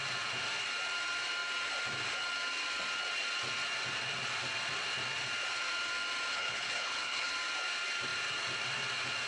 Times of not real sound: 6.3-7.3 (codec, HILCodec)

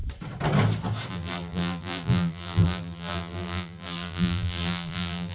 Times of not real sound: 1.1-5.3 (vocoder, BigVGAN v2)

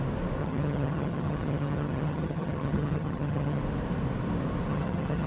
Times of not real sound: 0.4-3.6 (vocoder, HiFi-GAN); 4.7-5.3